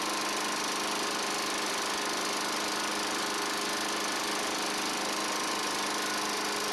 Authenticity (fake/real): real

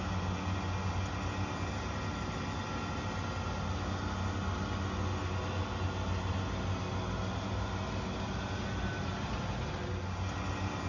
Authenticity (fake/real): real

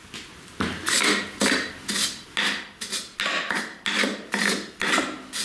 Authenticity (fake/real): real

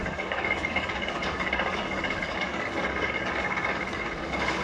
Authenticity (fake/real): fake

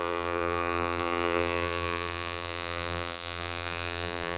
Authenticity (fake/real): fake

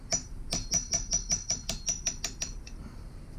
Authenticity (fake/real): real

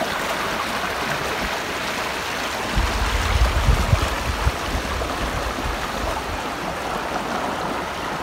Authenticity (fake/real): real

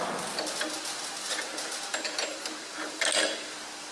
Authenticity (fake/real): real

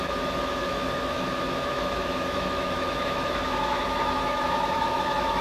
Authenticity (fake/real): fake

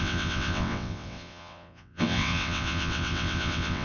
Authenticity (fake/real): fake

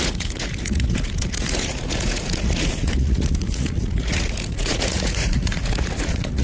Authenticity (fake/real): fake